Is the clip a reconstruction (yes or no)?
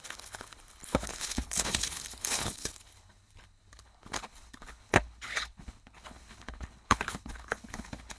yes